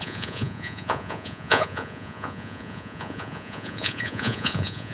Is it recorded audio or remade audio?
remade